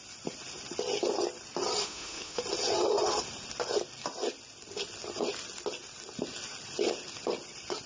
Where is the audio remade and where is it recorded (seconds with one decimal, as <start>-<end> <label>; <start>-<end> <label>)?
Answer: 0.0-1.8 recorded; 1.8-2.4 remade; 2.4-7.9 recorded